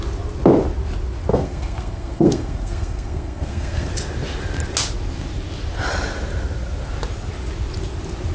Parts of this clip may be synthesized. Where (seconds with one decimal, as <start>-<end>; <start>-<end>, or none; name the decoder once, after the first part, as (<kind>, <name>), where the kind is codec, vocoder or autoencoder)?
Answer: 1.3-3.9 (codec, SNAC)